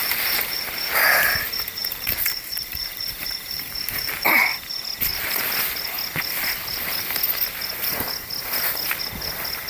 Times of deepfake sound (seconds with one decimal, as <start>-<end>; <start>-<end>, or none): 0.0-0.7; 1.8-4.5